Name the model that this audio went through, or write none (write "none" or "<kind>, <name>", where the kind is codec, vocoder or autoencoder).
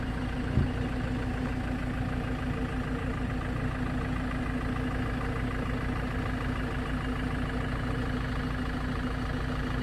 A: none